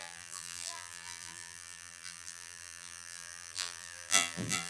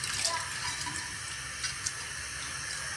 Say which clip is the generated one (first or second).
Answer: first